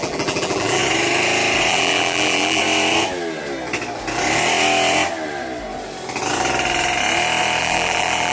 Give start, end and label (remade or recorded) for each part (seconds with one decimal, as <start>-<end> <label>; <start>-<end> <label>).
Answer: 0.0-0.8 remade; 0.8-1.7 recorded; 1.7-2.6 remade; 2.6-7.6 recorded; 7.6-8.3 remade